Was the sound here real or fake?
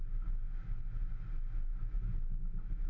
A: real